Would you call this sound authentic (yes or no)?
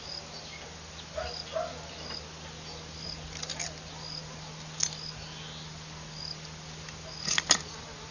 yes